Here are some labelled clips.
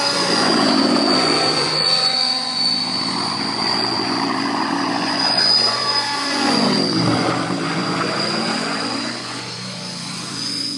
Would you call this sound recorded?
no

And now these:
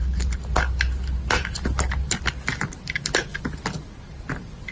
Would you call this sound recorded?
yes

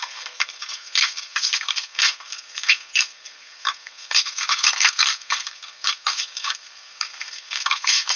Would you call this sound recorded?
no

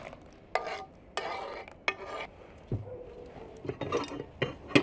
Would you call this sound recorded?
yes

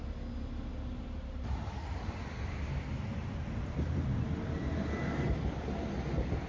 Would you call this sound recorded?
yes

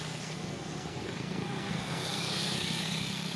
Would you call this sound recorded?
no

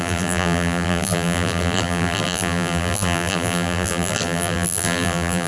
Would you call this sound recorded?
no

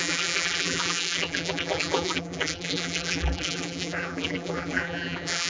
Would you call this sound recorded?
no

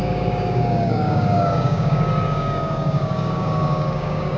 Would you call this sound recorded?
no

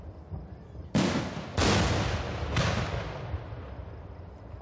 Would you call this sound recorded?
yes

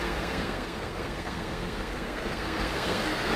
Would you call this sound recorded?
no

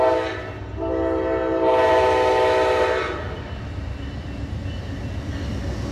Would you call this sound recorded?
yes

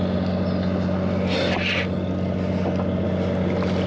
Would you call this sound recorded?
yes